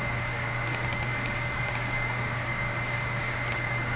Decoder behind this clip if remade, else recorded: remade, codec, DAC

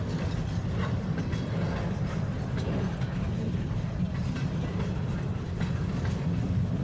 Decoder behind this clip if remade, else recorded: recorded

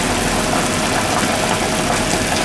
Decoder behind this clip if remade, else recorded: recorded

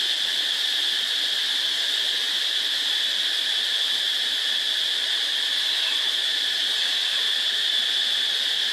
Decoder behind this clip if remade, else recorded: recorded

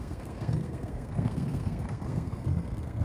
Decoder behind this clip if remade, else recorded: remade, codec, SNAC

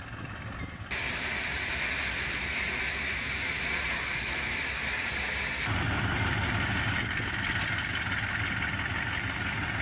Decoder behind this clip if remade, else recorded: recorded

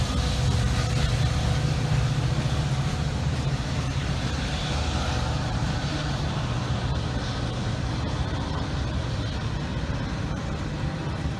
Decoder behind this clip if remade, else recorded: recorded